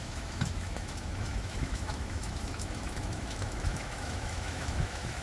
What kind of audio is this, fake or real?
fake